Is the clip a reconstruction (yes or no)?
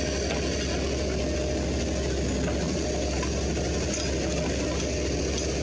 no